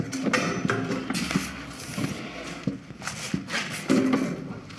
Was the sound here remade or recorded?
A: recorded